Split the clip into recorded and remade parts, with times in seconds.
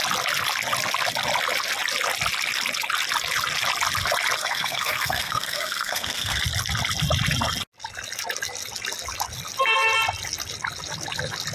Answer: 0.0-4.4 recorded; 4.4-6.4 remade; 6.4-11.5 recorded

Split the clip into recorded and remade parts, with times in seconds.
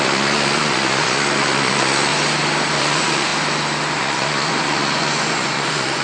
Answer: 0.0-2.1 remade; 2.1-2.8 recorded; 2.8-3.3 remade; 3.3-4.0 recorded; 4.0-6.0 remade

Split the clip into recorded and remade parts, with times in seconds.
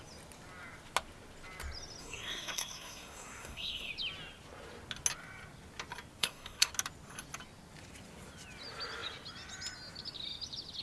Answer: 0.0-2.0 recorded; 2.0-3.9 remade; 3.9-6.2 recorded; 6.2-6.7 remade; 6.7-10.8 recorded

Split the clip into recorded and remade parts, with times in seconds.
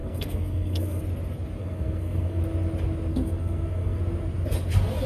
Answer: 0.0-1.0 remade; 1.0-1.6 recorded; 1.6-2.4 remade; 2.4-3.1 recorded; 3.1-4.0 remade; 4.0-5.1 recorded